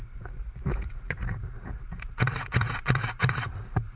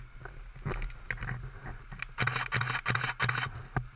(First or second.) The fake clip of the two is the first